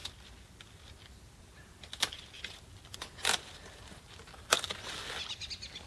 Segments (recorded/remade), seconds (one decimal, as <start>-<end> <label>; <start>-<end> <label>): 0.0-5.9 recorded